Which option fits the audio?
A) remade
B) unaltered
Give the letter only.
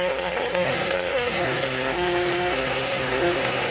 A